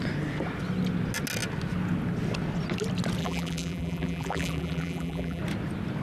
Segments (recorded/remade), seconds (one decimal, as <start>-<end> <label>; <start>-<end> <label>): 0.0-3.2 recorded; 3.2-5.4 remade; 5.4-6.0 recorded